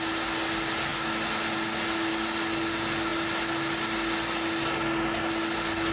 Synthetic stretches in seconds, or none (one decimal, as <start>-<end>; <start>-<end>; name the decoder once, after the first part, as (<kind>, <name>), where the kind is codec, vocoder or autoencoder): none